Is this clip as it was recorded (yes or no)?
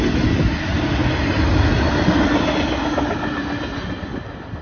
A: yes